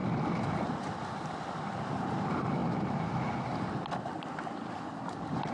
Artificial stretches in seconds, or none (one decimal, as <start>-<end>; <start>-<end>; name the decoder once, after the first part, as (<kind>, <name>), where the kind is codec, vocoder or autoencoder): 0.0-2.6 (vocoder, BigVGAN v2); 3.7-5.5